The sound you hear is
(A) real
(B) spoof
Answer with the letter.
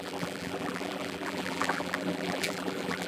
B